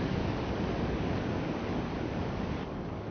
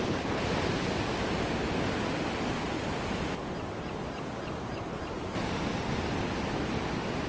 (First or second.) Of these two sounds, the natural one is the second